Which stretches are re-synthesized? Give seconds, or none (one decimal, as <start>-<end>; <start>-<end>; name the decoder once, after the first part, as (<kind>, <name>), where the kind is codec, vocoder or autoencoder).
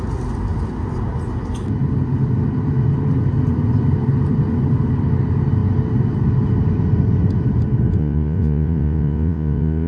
8.0-9.9 (vocoder, Vocos)